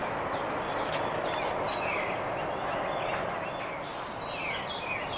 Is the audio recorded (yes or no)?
yes